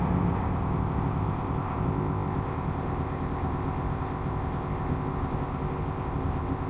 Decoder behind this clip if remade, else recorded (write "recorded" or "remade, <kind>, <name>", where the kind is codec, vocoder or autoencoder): remade, codec, ZipCodec